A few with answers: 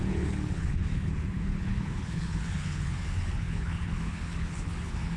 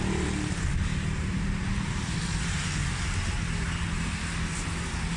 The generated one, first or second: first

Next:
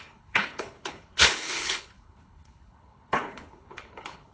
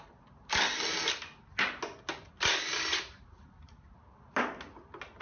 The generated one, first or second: first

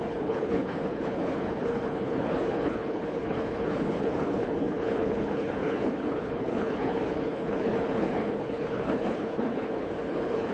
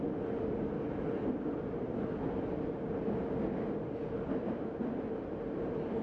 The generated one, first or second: first